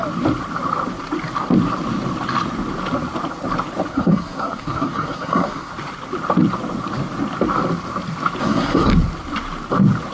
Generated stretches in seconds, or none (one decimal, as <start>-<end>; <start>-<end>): 3.9-5.7; 8.4-8.9